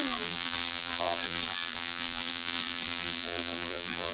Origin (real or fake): fake